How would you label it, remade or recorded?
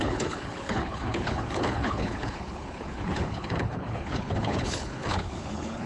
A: remade